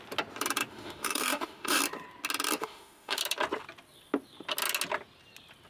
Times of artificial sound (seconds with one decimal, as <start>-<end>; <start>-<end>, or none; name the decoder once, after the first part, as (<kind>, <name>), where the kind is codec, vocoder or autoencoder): 0.7-1.8 (autoencoder, DAC-VAE); 2.6-3.2